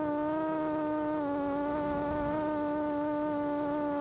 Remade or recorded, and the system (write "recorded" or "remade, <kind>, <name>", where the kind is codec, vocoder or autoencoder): remade, autoencoder, DAC-VAE